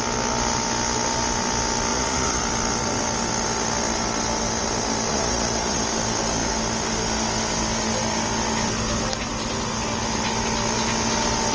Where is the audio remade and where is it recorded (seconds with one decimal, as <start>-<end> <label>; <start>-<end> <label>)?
0.0-1.9 recorded; 1.9-2.4 remade; 2.4-5.1 recorded; 5.1-5.8 remade; 5.8-11.5 recorded